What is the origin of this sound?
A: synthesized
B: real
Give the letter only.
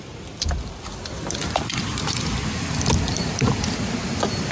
B